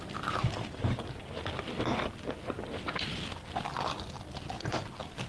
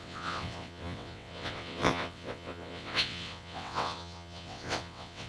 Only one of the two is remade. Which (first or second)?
second